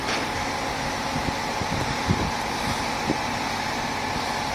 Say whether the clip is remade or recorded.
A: recorded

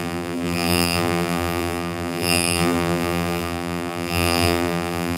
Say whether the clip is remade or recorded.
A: remade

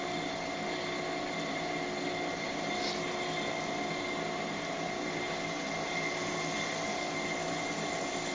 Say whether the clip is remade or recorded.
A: recorded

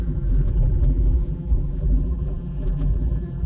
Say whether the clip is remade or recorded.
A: remade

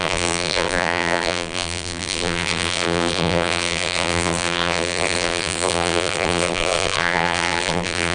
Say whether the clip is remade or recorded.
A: remade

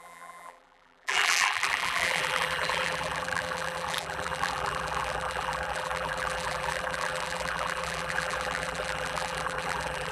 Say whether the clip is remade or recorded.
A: remade